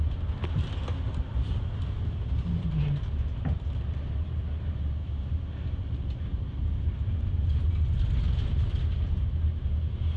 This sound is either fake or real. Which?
real